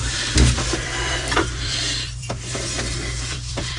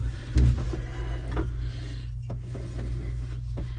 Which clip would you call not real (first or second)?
first